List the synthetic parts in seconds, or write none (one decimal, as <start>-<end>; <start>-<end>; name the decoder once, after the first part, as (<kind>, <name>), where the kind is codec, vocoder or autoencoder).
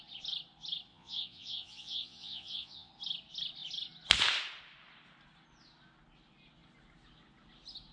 0.9-2.9 (vocoder, Vocos)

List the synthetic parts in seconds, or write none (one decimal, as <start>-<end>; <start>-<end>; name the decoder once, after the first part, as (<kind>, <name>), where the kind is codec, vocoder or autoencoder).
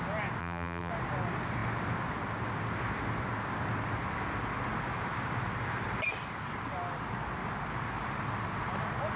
0.4-0.9 (vocoder, BigVGAN v2)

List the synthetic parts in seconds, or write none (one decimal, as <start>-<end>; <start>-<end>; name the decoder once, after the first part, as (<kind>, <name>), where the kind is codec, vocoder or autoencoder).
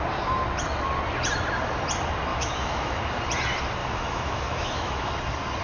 2.3-3.0 (autoencoder, DAC-VAE); 3.8-5.1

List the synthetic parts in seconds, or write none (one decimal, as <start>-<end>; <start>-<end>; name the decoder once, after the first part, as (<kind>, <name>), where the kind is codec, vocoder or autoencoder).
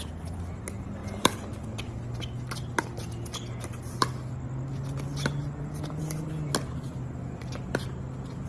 none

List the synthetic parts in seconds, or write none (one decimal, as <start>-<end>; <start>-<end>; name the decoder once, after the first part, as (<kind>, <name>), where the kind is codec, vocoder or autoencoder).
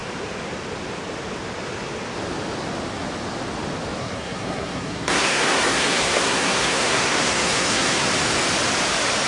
4.0-8.1 (codec, SNAC)